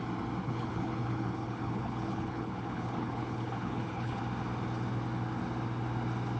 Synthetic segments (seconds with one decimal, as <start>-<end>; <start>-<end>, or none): 0.4-4.2